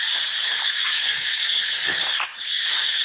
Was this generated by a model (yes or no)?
yes